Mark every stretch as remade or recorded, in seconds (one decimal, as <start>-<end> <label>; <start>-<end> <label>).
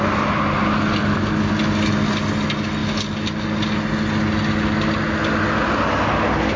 0.0-6.6 recorded